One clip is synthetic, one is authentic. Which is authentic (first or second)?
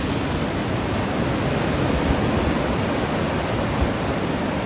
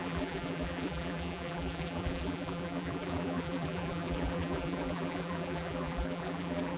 first